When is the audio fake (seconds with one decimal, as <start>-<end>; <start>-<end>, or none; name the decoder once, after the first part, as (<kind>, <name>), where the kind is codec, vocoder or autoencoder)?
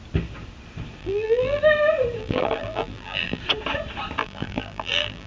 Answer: 1.0-1.6 (vocoder, BigVGAN v2); 2.2-3.4; 4.2-5.3